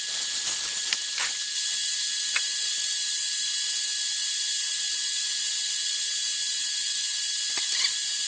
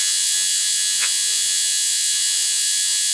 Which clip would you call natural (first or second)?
first